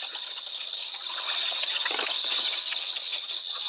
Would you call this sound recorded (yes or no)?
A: no